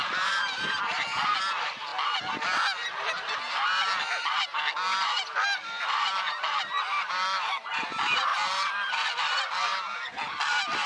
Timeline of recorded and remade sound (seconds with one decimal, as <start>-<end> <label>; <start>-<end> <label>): 0.0-1.9 remade; 1.9-4.2 recorded; 4.2-10.9 remade